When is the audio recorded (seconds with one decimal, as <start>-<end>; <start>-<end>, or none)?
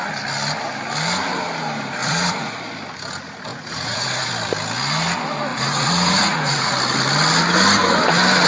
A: 0.0-2.0; 2.6-3.5; 4.3-5.5; 6.7-8.5